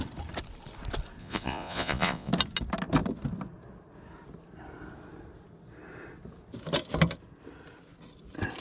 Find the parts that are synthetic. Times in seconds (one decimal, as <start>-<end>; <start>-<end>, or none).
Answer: 1.2-2.3